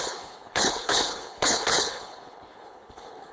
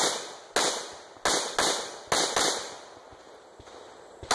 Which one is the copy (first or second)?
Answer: first